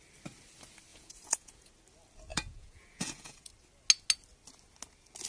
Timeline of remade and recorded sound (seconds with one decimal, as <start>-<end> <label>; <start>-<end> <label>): 0.0-0.9 recorded; 0.9-1.7 remade; 1.7-2.3 recorded; 2.3-3.5 remade; 3.5-5.3 recorded